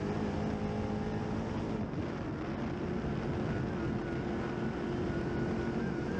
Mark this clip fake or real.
real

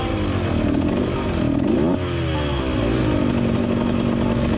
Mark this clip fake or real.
real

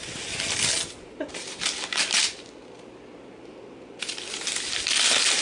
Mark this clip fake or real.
real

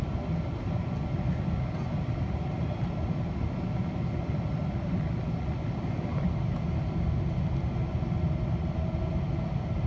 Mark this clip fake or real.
real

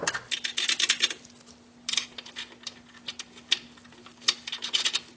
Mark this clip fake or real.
real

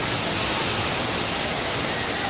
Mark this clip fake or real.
real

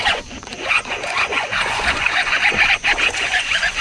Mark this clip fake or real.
fake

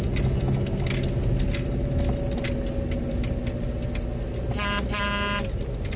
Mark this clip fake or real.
real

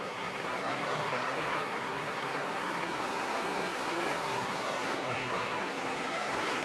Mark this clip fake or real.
fake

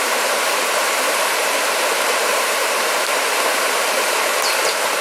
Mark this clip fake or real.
fake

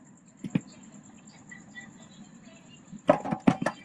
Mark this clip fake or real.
real